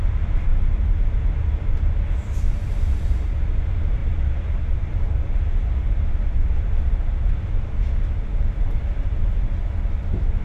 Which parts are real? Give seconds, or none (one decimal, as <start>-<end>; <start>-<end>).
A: 0.0-0.5; 3.3-4.0; 7.6-10.4